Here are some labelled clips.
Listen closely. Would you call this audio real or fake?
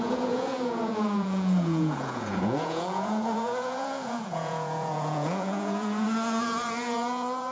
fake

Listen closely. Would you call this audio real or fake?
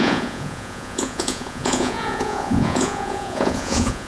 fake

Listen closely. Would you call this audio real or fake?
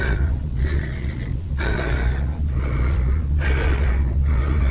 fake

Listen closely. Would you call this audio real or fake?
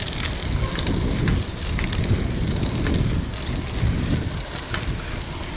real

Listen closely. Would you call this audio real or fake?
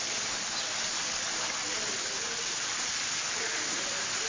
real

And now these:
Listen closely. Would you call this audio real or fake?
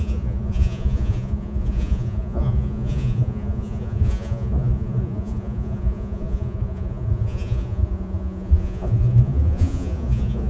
fake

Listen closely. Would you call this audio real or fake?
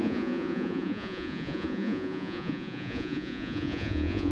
fake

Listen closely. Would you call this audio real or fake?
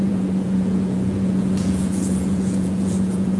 fake